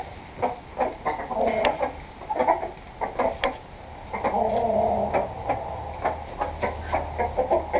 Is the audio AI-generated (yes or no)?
no